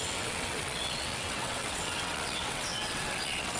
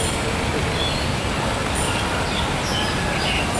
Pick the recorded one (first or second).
second